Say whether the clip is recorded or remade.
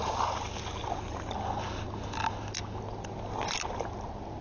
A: recorded